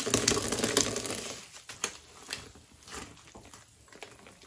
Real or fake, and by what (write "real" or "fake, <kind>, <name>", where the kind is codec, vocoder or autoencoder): real